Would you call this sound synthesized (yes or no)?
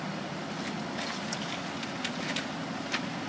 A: no